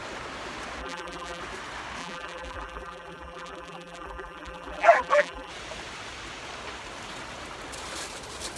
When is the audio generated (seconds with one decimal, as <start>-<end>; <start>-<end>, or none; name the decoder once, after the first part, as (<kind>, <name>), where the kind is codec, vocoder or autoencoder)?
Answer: 0.8-1.4 (vocoder, BigVGAN v2); 2.0-5.5